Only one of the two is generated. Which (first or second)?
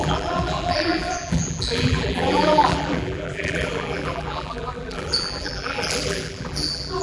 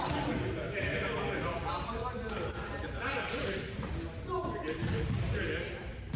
first